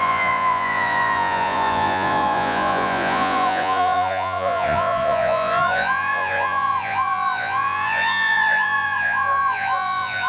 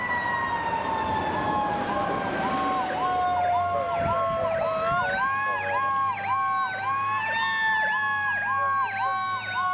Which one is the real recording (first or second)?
second